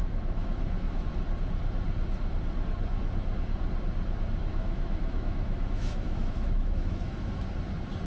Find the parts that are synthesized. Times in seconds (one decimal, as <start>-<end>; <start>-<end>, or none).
0.0-1.1; 4.5-7.4